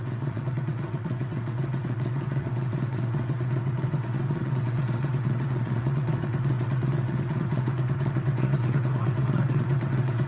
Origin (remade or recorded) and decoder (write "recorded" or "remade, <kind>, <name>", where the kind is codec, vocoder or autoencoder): remade, vocoder, WaveNeXt